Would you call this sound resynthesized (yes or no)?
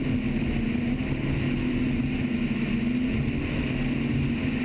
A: no